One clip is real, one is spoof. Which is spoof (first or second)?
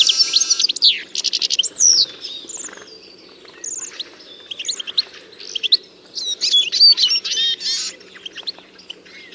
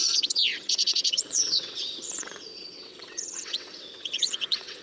second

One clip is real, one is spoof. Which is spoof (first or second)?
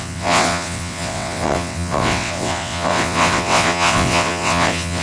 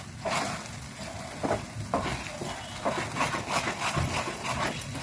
first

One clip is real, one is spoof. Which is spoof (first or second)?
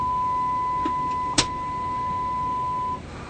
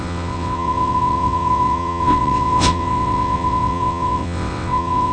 second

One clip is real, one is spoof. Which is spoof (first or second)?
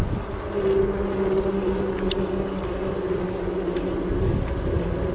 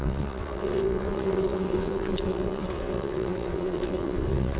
second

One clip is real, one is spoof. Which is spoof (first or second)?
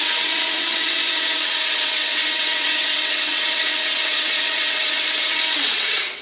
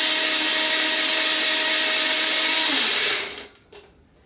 first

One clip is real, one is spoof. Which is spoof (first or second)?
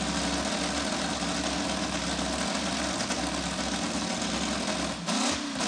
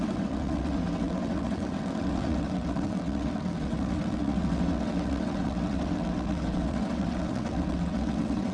second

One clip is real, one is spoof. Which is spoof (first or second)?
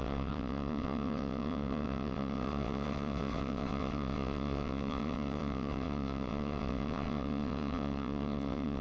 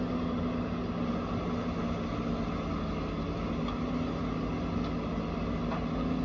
first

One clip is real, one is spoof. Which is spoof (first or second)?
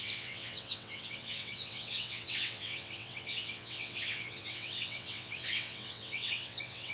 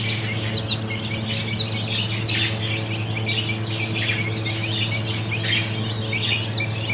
first